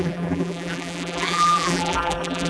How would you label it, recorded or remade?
remade